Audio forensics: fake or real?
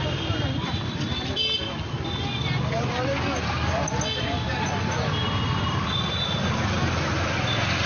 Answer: real